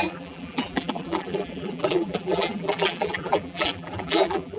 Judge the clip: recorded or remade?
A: remade